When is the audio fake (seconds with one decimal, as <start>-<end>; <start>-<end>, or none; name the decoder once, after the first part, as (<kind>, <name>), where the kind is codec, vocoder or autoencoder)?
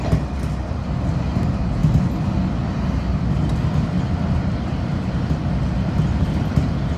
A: none